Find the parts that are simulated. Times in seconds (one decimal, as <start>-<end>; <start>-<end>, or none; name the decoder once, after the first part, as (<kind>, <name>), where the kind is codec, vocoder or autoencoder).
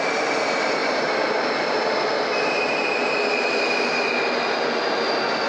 none